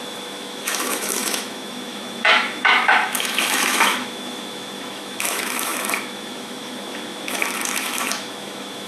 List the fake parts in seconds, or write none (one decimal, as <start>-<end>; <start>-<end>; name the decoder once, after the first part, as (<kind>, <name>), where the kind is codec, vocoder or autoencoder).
0.0-8.9 (autoencoder, DAC-VAE)